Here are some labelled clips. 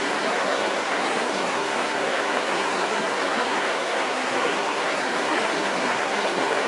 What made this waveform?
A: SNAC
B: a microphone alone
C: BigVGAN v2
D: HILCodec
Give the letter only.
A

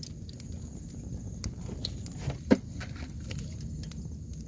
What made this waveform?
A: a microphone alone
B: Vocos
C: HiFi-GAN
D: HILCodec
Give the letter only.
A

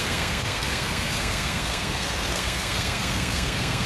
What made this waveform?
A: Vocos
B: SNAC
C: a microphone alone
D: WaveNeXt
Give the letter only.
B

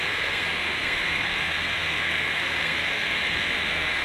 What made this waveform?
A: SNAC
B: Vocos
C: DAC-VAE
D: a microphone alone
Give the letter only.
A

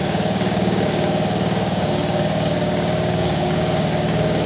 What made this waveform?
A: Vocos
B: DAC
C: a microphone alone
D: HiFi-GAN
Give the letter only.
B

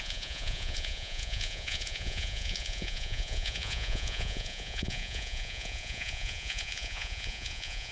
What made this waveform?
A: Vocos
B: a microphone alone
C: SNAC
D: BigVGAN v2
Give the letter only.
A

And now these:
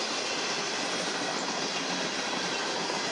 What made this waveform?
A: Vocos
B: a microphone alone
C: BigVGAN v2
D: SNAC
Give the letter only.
B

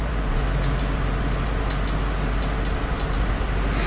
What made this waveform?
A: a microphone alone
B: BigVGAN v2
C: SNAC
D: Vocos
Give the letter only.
A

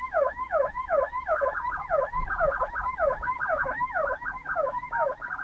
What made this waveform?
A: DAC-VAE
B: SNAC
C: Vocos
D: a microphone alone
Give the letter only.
A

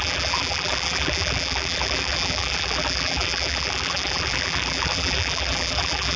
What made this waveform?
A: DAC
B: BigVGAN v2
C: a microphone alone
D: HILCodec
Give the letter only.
B